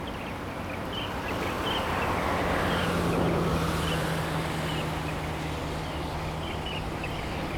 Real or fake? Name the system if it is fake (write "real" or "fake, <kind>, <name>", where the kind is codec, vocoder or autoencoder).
real